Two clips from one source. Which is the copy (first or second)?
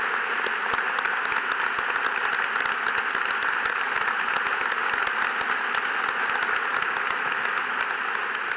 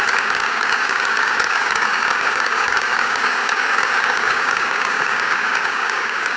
second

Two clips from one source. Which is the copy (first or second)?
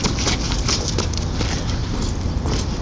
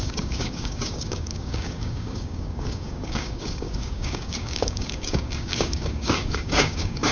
second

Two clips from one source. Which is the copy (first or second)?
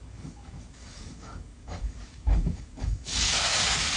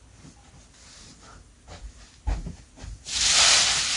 first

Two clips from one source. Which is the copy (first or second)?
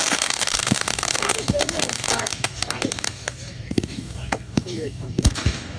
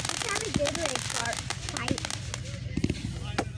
first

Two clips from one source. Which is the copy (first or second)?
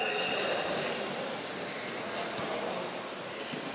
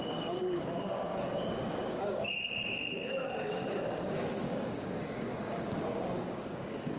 second